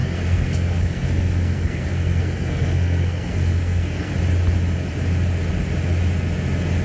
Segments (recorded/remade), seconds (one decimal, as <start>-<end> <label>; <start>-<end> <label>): 0.0-4.1 remade; 4.1-6.8 recorded